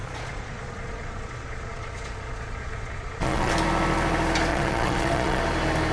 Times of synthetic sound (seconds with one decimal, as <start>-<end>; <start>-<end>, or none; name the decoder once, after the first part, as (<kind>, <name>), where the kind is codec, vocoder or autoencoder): 0.0-3.5 (vocoder, Vocos); 4.5-5.4

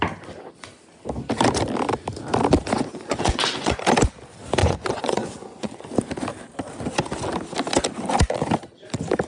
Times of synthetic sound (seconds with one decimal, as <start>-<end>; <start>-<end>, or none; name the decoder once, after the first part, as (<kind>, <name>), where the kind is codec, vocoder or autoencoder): 2.9-3.8 (vocoder, Vocos); 4.6-5.9